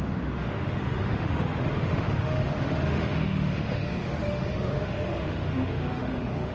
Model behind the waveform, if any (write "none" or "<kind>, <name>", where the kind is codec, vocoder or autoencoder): autoencoder, DAC-VAE